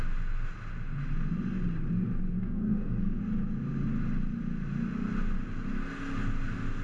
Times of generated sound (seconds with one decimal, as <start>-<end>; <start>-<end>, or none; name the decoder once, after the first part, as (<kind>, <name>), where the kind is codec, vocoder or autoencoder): 2.4-3.2 (codec, SNAC)